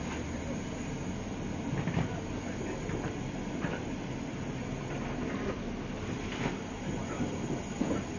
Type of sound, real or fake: real